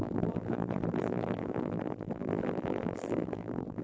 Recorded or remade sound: remade